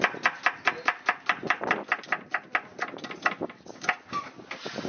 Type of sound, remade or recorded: recorded